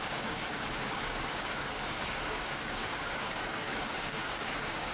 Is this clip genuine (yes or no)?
no